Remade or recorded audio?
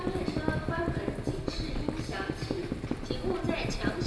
recorded